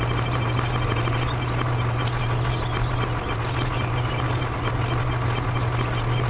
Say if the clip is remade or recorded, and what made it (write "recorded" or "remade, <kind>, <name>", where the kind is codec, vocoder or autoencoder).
recorded